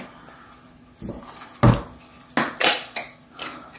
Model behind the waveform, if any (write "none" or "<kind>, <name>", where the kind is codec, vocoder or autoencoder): none